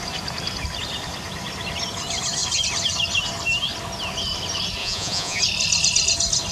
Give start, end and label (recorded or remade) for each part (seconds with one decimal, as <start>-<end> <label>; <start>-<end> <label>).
0.0-4.8 recorded; 4.8-5.4 remade; 5.4-6.5 recorded